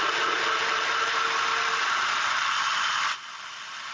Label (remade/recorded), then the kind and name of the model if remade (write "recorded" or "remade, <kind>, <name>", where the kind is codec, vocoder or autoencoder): recorded